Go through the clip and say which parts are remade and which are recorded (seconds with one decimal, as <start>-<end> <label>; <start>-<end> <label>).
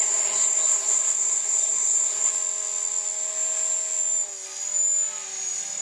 0.0-2.3 remade; 2.3-5.8 recorded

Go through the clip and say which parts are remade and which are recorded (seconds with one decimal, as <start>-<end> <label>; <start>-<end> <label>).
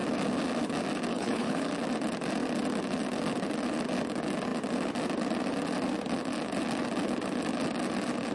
0.0-1.1 recorded; 1.1-1.7 remade; 1.7-8.3 recorded